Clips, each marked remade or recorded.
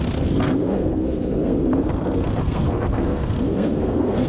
remade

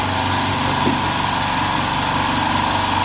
recorded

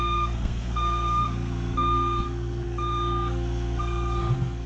remade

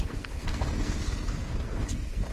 remade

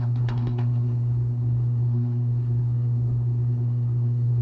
remade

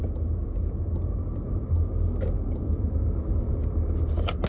recorded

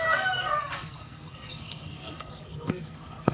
remade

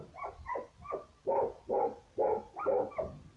recorded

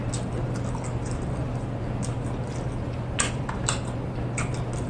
recorded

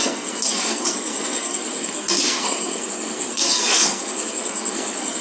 remade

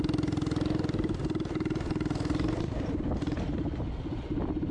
recorded